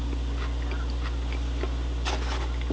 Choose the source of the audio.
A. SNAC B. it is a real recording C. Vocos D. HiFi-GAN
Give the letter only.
B